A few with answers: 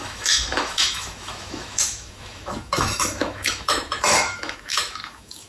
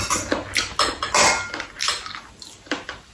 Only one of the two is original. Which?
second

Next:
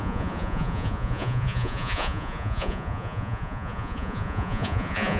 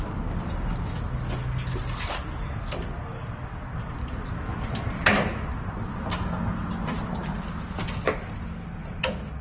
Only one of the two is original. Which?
second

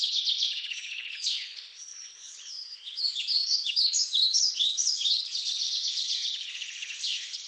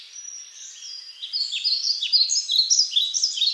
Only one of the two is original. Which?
second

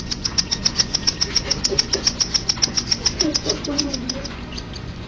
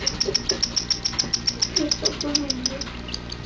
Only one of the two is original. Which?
second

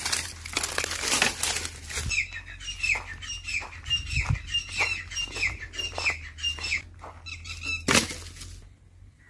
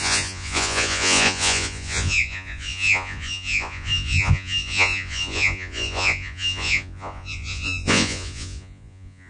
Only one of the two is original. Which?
first